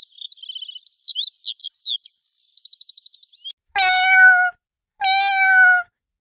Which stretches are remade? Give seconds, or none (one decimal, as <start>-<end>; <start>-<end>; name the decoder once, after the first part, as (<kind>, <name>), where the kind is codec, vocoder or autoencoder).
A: 1.6-2.4 (autoencoder, DAC-VAE)